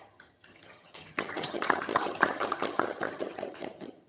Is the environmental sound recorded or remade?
remade